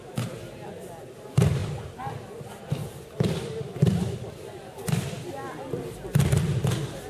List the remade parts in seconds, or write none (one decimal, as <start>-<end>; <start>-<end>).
none